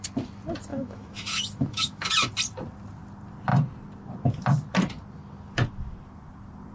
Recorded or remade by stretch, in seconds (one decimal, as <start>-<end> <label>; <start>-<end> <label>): 0.0-0.7 recorded; 0.7-2.1 remade; 2.1-6.7 recorded